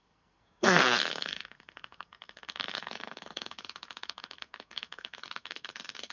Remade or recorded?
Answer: remade